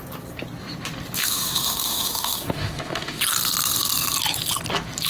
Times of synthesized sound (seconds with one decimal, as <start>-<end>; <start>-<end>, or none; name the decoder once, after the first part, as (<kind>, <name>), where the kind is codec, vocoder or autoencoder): 1.2-3.2 (autoencoder, DAC-VAE)